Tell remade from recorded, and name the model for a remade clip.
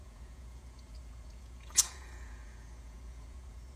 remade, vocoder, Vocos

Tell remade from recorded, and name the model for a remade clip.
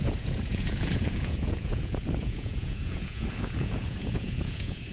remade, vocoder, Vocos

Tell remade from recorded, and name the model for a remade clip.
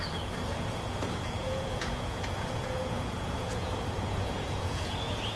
remade, vocoder, Vocos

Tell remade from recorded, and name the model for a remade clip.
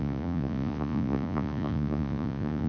remade, vocoder, Vocos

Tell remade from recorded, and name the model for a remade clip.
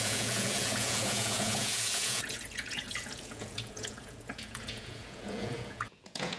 remade, vocoder, Vocos